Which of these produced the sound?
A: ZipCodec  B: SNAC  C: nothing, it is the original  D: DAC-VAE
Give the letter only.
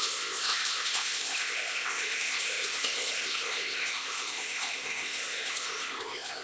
A